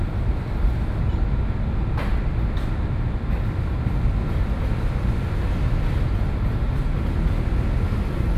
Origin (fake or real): real